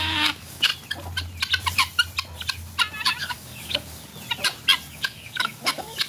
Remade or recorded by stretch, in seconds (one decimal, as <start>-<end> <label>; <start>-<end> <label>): 0.0-0.7 remade; 0.7-3.2 recorded; 3.2-4.1 remade; 4.1-4.9 recorded; 4.9-6.1 remade